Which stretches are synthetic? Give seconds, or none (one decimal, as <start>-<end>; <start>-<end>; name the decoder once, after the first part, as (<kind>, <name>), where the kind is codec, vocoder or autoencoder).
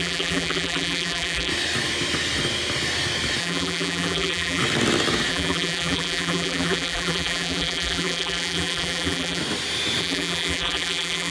0.0-1.5 (vocoder, BigVGAN v2); 3.4-4.6; 5.3-9.4; 10.0-11.3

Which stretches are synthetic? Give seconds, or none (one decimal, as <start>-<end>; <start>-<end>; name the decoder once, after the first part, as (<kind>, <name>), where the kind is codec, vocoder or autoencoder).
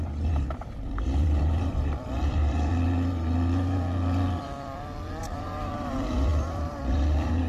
0.0-2.7 (vocoder, BigVGAN v2); 5.2-7.5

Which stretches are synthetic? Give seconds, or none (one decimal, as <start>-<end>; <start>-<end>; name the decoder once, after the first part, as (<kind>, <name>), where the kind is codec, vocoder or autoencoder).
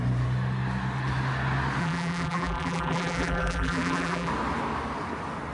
1.8-4.3 (vocoder, BigVGAN v2)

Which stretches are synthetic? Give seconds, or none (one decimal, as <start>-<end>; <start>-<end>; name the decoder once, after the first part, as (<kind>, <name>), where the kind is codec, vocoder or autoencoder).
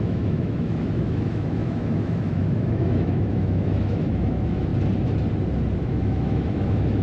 0.0-4.7 (autoencoder, DAC-VAE); 5.8-7.0